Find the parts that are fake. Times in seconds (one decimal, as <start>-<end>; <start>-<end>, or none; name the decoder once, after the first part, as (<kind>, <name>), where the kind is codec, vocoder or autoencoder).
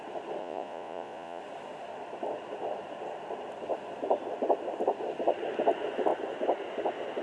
0.4-1.4 (vocoder, Vocos)